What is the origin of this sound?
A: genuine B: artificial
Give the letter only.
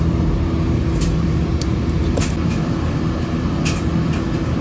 A